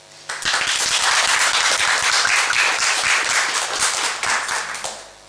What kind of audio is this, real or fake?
real